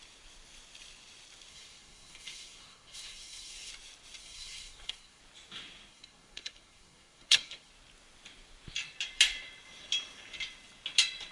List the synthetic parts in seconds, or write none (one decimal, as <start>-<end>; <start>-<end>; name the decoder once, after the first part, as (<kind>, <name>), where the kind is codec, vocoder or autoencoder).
1.5-3.7 (codec, SNAC); 4.2-5.2; 5.9-7.7